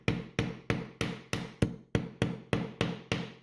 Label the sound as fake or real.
real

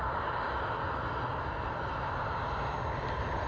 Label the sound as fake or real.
real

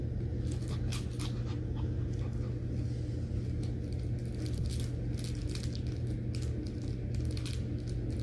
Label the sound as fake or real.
real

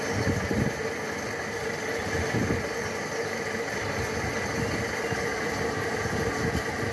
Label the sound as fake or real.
real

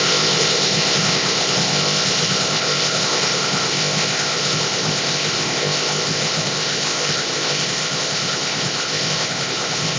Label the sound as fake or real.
fake